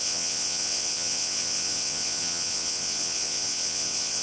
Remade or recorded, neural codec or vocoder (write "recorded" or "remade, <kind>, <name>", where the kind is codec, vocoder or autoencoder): remade, vocoder, WaveNeXt